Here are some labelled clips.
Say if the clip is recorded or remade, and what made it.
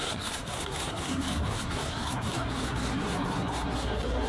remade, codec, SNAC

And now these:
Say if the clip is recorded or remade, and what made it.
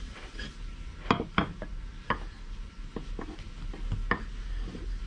recorded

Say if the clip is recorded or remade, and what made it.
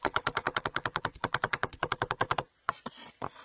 remade, vocoder, Vocos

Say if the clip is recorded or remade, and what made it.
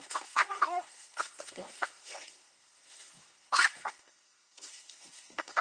remade, codec, SNAC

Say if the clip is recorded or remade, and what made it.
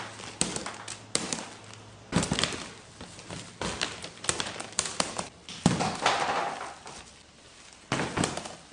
recorded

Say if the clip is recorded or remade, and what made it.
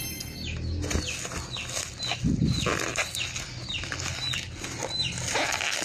recorded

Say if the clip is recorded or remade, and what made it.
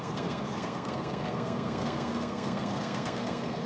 remade, codec, SNAC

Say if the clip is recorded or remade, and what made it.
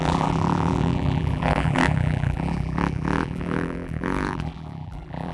remade, vocoder, BigVGAN v2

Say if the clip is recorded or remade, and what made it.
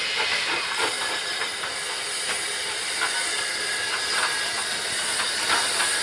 recorded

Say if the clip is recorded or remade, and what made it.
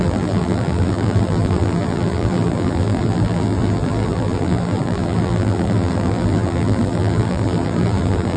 remade, vocoder, BigVGAN v2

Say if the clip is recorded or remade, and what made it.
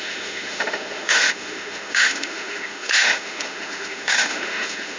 remade, autoencoder, DAC-VAE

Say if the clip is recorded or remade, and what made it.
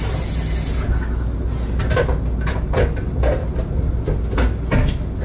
recorded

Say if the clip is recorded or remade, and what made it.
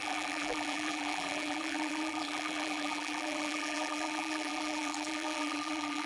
remade, vocoder, BigVGAN v2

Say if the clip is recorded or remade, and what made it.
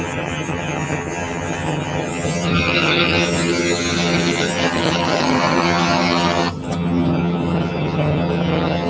remade, vocoder, HiFi-GAN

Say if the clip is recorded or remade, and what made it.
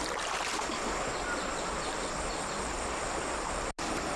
recorded